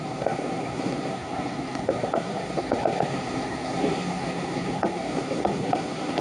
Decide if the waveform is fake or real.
fake